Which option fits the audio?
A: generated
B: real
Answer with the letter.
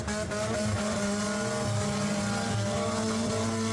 B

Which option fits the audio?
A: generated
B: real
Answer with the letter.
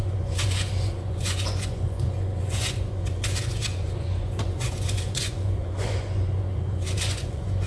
A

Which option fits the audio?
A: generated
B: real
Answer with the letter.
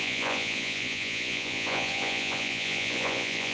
A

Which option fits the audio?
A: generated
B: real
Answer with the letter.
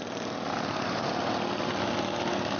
B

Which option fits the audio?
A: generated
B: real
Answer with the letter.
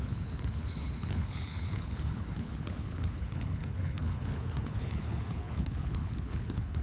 A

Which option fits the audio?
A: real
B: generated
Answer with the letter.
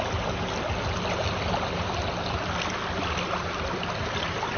A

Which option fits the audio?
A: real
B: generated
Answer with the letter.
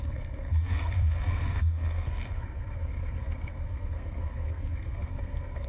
B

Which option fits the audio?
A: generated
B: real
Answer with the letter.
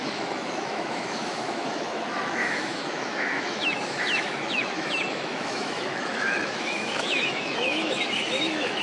A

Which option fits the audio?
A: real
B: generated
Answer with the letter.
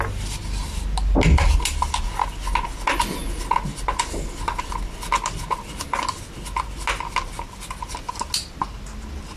A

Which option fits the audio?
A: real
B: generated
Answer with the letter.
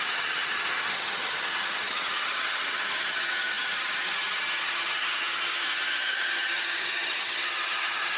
B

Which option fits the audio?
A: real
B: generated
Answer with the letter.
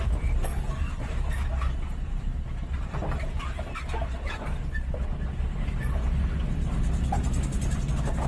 A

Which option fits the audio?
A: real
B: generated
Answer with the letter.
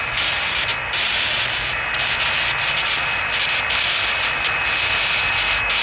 A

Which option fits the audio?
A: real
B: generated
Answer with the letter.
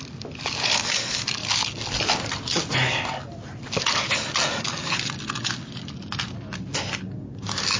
A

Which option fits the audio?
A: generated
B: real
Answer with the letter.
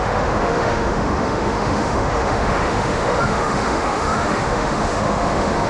A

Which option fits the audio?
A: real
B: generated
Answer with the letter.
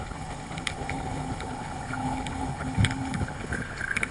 B